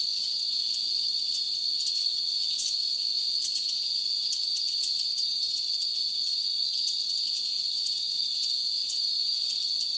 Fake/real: fake